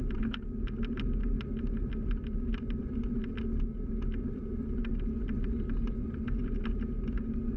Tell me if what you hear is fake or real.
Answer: real